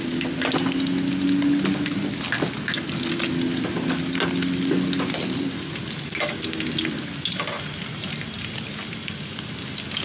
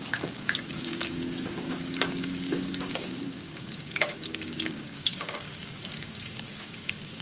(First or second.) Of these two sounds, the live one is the first